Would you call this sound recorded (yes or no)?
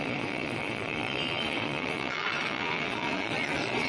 no